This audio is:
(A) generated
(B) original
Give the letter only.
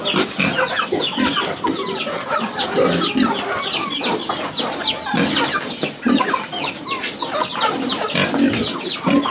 B